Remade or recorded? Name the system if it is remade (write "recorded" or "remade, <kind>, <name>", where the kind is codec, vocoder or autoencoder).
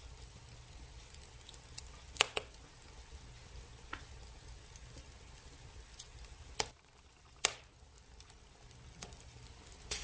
recorded